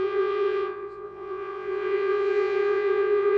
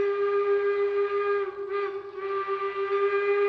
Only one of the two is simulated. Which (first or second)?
first